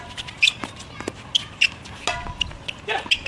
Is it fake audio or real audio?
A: real